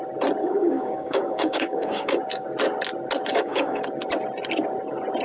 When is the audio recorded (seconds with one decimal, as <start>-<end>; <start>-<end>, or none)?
0.0-0.4; 2.2-3.3; 3.8-5.2